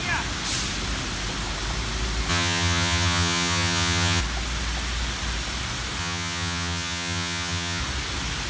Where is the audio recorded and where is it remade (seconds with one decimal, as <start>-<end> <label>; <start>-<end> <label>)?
0.0-2.3 recorded; 2.3-4.2 remade; 4.2-6.0 recorded; 6.0-7.8 remade; 7.8-8.5 recorded